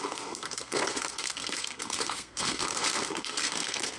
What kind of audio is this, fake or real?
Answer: fake